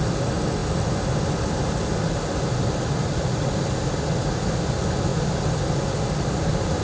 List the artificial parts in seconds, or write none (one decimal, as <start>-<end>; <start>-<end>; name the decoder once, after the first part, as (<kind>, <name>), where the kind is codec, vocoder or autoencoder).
none